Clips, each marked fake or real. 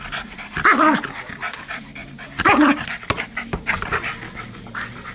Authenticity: real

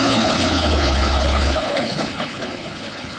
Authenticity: fake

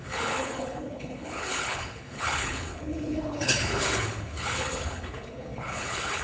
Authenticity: fake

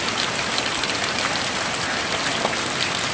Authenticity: real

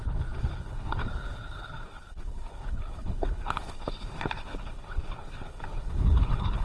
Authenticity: fake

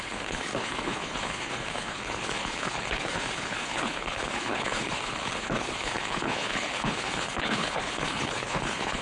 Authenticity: fake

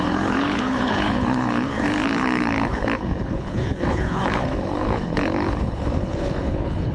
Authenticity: fake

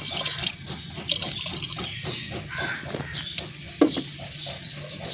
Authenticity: real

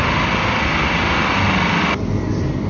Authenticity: real